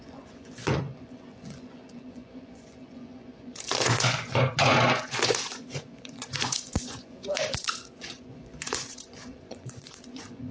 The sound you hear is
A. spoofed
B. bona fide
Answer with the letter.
A